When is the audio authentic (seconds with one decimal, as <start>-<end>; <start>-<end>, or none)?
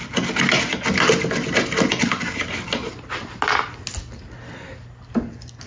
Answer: 0.0-5.7